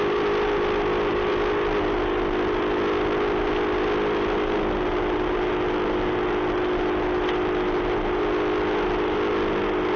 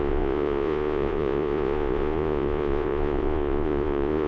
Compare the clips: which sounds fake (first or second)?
second